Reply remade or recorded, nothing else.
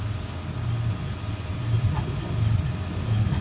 recorded